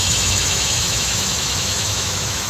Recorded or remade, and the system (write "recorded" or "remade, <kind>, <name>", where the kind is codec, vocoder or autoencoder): remade, autoencoder, DAC-VAE